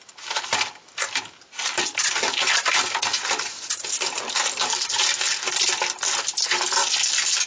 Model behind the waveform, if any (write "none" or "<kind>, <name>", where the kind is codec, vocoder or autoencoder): none